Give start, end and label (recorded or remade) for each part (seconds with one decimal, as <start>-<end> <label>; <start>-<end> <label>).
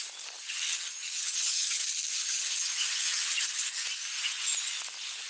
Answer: 0.0-0.7 recorded; 0.7-1.8 remade; 1.8-2.2 recorded; 2.2-3.8 remade; 3.8-5.3 recorded